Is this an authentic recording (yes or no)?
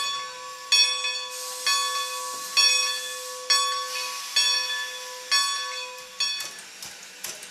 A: yes